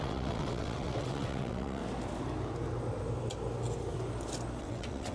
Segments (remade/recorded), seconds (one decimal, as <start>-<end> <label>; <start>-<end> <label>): 0.0-1.8 remade; 1.8-4.6 recorded; 4.6-5.1 remade